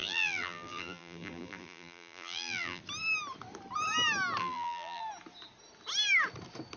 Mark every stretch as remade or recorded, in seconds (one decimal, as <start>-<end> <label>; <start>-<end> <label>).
0.0-2.8 remade; 2.8-4.4 recorded; 4.4-5.0 remade; 5.0-6.8 recorded